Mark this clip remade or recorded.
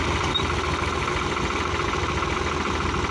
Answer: recorded